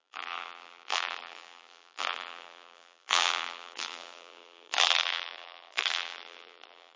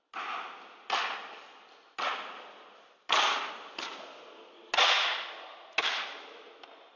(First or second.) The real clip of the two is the second